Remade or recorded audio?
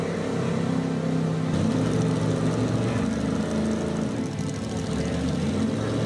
recorded